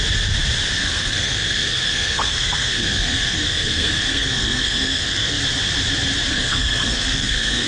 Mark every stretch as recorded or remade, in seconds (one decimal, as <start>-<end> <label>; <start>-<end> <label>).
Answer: 0.0-0.8 recorded; 0.8-5.4 remade; 5.4-6.3 recorded; 6.3-7.7 remade